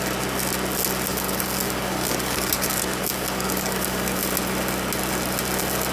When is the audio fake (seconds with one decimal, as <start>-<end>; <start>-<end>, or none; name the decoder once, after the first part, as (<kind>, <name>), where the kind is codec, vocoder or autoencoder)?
1.1-4.2 (codec, DAC)

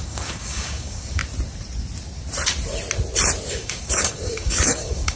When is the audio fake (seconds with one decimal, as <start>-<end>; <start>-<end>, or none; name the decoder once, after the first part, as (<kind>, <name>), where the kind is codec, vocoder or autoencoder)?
0.0-1.2 (codec, DAC); 3.5-5.2

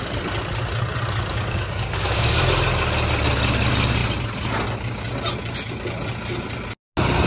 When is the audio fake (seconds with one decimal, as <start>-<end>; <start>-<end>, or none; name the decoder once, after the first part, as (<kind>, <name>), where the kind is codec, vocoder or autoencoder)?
1.3-2.4 (codec, DAC)

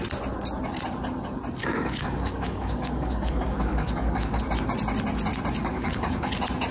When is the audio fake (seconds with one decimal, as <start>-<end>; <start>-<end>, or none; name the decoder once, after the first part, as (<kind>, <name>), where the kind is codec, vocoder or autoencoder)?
1.6-4.4 (codec, DAC); 5.6-6.3

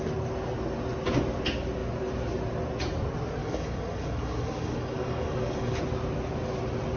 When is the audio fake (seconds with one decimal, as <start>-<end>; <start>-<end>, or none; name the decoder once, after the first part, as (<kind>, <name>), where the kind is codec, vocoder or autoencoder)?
3.4-5.8 (codec, DAC)

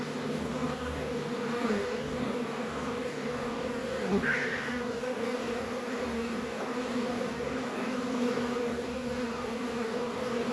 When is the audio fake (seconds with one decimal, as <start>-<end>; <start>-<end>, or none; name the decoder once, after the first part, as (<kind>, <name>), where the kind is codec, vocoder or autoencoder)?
0.0-10.5 (codec, DAC)

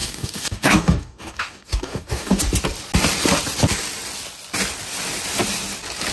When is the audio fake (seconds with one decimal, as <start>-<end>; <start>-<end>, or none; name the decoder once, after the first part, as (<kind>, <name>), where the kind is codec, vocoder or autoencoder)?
0.0-2.4 (codec, DAC)

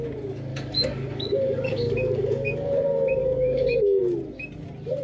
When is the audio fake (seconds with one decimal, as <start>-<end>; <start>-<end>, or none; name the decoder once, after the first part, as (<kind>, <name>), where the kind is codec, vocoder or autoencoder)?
0.5-2.7 (codec, DAC); 3.2-4.0